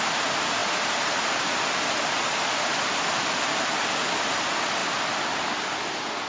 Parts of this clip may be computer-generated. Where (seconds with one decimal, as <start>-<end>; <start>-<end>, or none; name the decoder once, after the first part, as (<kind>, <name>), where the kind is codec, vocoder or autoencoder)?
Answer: 0.6-1.6 (vocoder, BigVGAN v2)